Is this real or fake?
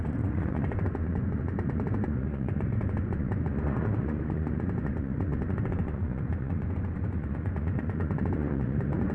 fake